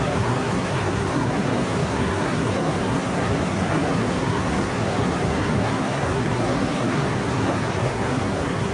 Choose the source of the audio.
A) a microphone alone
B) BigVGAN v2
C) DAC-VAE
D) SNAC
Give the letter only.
D